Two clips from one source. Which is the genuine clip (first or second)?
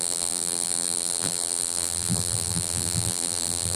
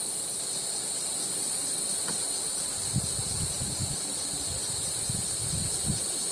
second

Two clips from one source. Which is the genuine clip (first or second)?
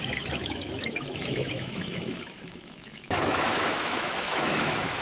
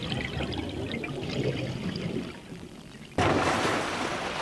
second